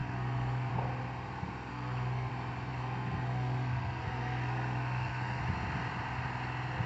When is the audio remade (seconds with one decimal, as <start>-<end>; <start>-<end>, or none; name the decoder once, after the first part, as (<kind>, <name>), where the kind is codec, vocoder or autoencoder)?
0.0-0.7 (codec, SNAC); 1.7-2.3; 2.7-5.4